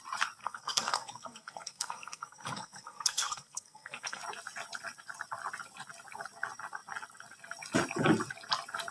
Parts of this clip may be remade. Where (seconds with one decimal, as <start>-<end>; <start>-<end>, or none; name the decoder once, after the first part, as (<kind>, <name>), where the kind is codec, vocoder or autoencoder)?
0.4-4.2 (codec, SNAC)